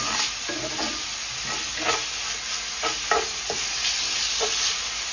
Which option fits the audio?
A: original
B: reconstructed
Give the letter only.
A